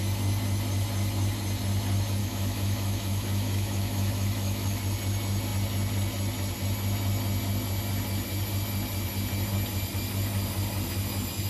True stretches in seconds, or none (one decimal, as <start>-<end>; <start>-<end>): 0.0-2.2; 4.8-11.5